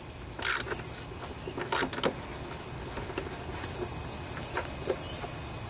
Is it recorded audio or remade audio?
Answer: recorded